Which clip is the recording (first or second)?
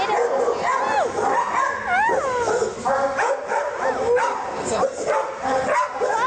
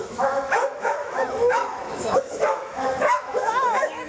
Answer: first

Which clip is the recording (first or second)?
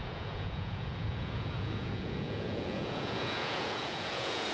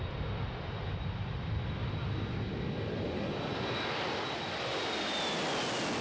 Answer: second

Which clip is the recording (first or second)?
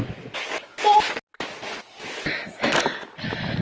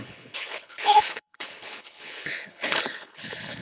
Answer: first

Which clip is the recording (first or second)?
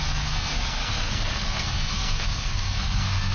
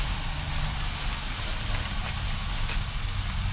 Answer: second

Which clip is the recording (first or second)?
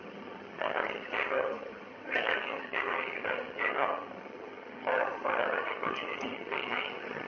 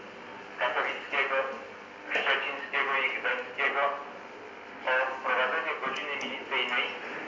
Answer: second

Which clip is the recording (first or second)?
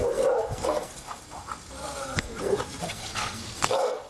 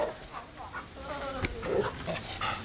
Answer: second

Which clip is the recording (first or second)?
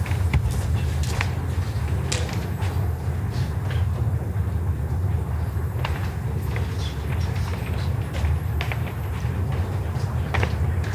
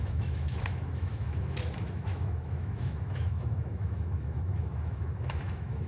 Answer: first